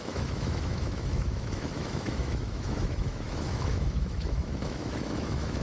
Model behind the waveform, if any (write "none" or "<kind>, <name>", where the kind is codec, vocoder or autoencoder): autoencoder, DAC-VAE